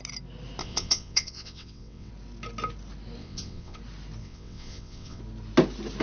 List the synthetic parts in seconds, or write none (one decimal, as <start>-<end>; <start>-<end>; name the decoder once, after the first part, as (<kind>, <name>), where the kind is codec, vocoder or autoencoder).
0.6-2.1 (vocoder, WaveNeXt); 3.2-3.8; 4.2-5.2